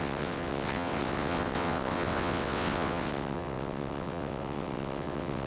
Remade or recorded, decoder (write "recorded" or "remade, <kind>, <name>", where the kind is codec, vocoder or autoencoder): remade, vocoder, WaveNeXt